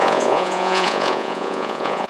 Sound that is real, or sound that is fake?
fake